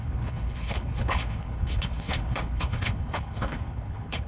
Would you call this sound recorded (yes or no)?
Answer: no